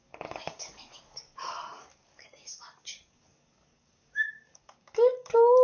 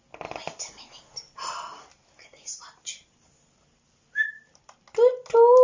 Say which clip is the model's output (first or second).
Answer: first